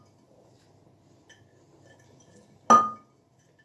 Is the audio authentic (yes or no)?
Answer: yes